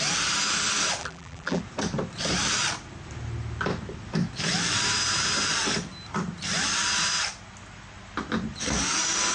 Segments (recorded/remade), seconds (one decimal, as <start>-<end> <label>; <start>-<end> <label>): 0.0-1.0 recorded; 1.0-1.6 remade; 1.6-9.3 recorded